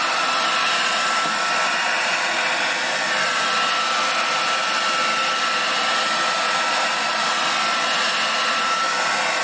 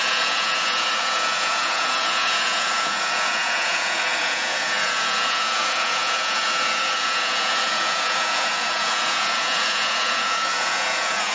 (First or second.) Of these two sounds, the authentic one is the first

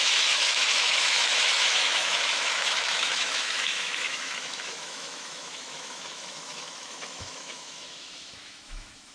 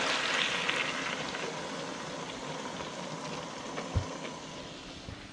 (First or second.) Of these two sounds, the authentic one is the second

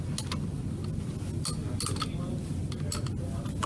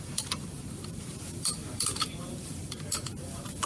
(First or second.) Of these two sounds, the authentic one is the first